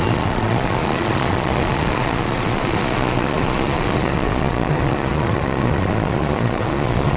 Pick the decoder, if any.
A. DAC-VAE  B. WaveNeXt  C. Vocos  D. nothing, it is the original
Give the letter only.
C